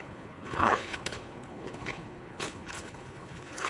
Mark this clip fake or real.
fake